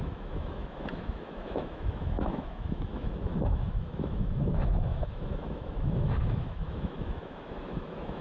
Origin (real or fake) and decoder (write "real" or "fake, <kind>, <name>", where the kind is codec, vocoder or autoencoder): fake, autoencoder, DAC-VAE